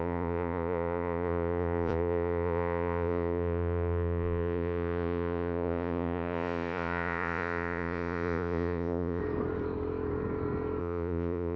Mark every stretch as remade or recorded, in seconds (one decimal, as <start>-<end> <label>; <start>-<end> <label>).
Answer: 0.0-9.2 remade; 9.2-10.8 recorded; 10.8-11.6 remade